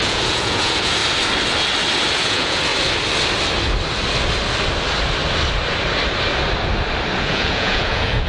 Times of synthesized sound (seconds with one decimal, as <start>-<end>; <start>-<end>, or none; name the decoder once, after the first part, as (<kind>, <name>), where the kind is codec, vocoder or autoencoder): 0.0-1.0 (vocoder, Vocos); 2.1-2.7; 7.2-8.3